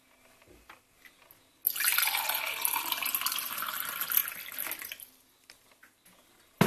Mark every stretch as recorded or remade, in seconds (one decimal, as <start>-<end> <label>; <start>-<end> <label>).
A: 0.0-6.7 recorded